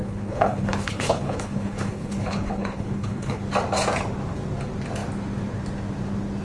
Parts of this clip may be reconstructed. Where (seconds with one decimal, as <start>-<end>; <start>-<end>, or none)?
0.0-3.4